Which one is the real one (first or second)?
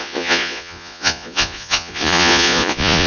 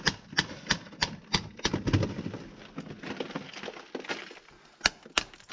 second